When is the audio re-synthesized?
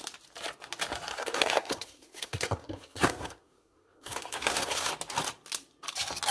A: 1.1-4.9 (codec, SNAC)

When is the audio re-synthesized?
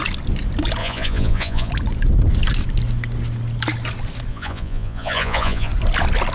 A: 0.8-1.7 (vocoder, Vocos); 4.3-5.7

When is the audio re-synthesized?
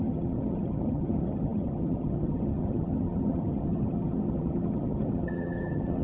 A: 0.0-6.0 (vocoder, HiFi-GAN)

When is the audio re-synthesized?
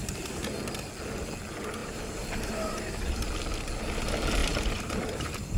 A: 0.0-0.9 (vocoder, BigVGAN v2); 1.8-3.3; 4.4-5.6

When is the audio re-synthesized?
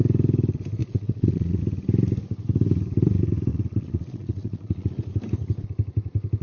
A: 0.8-1.6 (vocoder, Vocos); 3.5-4.9